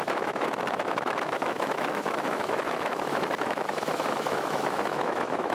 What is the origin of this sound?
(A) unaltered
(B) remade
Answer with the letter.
B